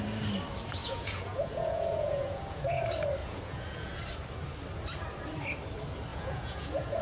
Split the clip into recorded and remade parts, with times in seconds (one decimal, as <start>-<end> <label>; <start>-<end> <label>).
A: 0.0-0.8 recorded; 0.8-2.8 remade; 2.8-3.2 recorded; 3.2-4.0 remade; 4.0-6.1 recorded; 6.1-7.0 remade